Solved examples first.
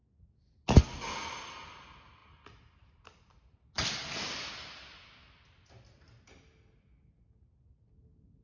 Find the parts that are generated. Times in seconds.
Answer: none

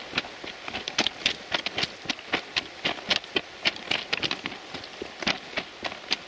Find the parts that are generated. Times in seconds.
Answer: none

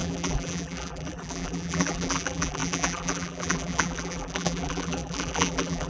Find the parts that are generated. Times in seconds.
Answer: 0.0-5.9

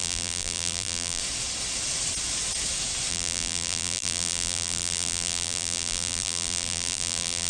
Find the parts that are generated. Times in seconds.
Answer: 0.0-1.2; 3.1-7.5

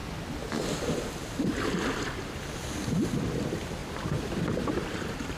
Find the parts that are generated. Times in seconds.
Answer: 3.8-5.4

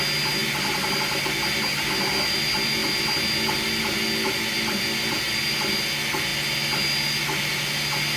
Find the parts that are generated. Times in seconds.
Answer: none

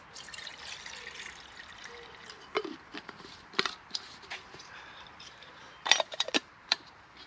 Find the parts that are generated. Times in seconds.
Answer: 0.0-0.5; 3.0-7.3

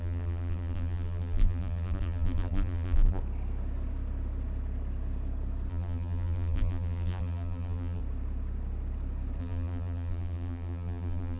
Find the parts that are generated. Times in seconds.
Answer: 0.0-3.2; 5.7-8.0; 9.4-11.4